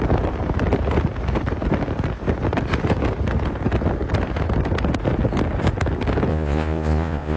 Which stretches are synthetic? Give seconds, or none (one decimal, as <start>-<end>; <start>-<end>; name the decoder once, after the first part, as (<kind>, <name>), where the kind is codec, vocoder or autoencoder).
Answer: 6.3-7.4 (vocoder, Vocos)